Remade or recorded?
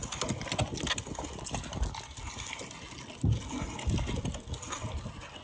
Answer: recorded